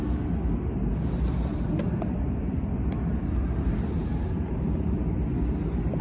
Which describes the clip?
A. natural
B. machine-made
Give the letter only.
A